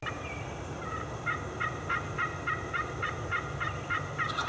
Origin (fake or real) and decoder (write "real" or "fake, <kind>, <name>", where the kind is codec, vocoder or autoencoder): real